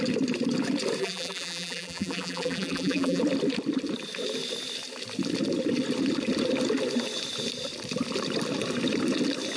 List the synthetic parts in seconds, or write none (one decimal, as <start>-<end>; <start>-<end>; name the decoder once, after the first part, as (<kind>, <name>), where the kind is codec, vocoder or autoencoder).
1.0-3.2 (vocoder, BigVGAN v2)